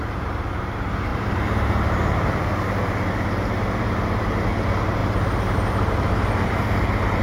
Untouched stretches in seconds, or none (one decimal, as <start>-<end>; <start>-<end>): none

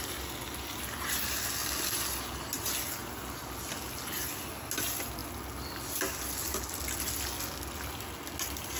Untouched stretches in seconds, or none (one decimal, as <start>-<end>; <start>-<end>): 0.0-8.8

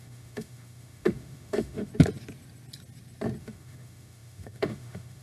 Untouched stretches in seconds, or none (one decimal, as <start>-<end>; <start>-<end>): 1.9-3.4

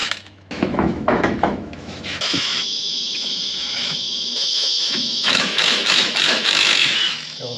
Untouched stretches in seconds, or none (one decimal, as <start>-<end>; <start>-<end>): none

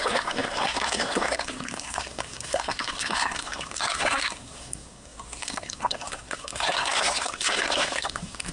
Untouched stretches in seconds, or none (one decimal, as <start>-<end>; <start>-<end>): none